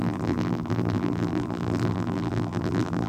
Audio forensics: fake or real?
fake